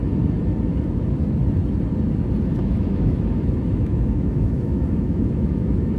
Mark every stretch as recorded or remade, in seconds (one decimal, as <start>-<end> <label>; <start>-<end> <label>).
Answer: 0.0-0.7 recorded; 0.7-1.4 remade; 1.4-2.5 recorded; 2.5-6.0 remade

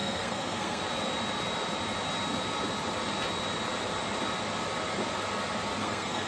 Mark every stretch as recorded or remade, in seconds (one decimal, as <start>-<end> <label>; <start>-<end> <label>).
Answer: 0.0-0.8 remade; 0.8-5.8 recorded; 5.8-6.3 remade

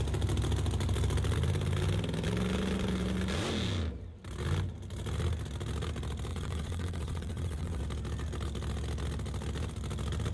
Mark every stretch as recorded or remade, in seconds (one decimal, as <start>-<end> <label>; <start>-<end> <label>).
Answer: 0.0-6.3 recorded; 6.3-7.8 remade; 7.8-10.3 recorded

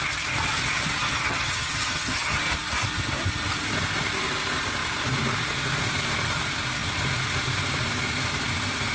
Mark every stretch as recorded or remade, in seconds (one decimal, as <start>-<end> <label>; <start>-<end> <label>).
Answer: 0.0-1.0 recorded; 1.0-2.4 remade; 2.4-8.9 recorded

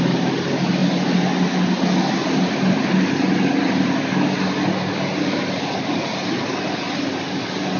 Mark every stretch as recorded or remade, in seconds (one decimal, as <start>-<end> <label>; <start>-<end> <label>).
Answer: 0.0-7.8 recorded